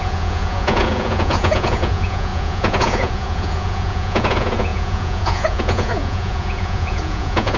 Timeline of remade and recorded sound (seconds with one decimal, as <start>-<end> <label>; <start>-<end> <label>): 0.0-7.6 remade